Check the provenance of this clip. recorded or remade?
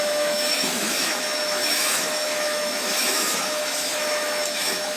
remade